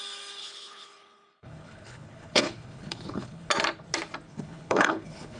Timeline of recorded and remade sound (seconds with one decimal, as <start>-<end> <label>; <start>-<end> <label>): 0.0-0.4 recorded; 0.4-3.5 remade; 3.5-4.3 recorded; 4.3-5.4 remade